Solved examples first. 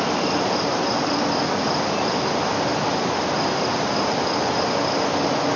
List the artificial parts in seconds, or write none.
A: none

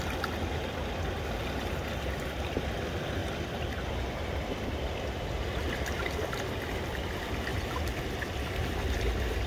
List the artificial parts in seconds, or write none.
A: 7.5-8.0